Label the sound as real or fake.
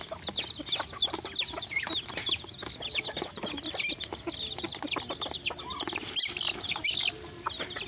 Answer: real